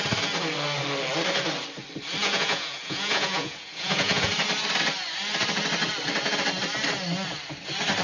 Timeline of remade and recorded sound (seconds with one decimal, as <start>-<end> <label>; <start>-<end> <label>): 0.0-2.2 recorded; 2.2-4.3 remade; 4.3-8.0 recorded